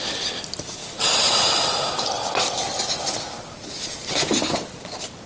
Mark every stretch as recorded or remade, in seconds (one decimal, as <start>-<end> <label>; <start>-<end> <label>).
0.0-0.8 recorded; 0.8-3.3 remade; 3.3-5.3 recorded